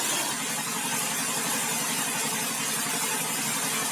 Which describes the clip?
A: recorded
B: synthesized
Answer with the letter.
A